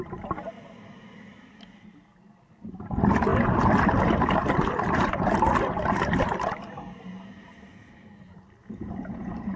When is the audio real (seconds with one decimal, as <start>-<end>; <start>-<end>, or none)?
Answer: 0.0-8.6